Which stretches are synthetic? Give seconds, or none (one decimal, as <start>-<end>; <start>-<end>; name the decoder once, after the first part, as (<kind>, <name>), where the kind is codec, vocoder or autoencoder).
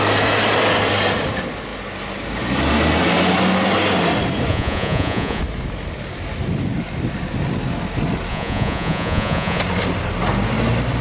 4.5-5.4 (vocoder, Vocos); 8.3-9.6